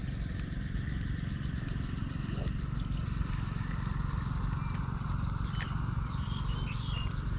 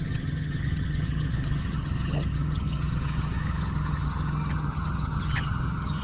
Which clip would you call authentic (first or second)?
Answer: first